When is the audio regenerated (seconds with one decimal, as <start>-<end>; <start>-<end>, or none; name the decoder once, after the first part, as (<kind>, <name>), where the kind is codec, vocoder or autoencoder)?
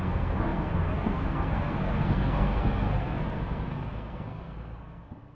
0.0-5.3 (codec, SNAC)